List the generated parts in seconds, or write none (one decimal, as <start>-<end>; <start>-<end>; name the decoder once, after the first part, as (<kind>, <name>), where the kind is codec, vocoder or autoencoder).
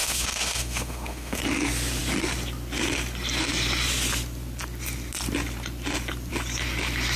0.0-1.4 (autoencoder, DAC-VAE)